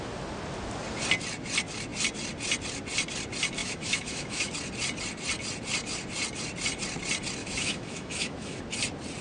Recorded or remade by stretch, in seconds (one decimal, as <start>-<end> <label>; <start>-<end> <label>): 0.0-3.6 recorded; 3.6-4.5 remade; 4.5-7.4 recorded; 7.4-8.6 remade; 8.6-9.2 recorded